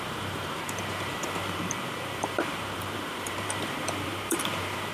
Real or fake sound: fake